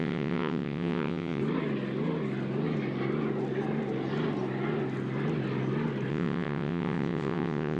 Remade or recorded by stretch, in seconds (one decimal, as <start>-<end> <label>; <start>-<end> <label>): 0.0-1.4 remade; 1.4-6.1 recorded; 6.1-7.8 remade